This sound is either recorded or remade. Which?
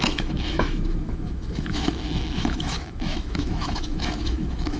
remade